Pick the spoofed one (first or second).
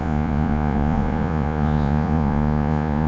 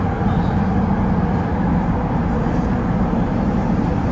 first